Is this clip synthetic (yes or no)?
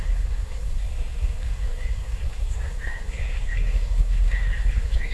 yes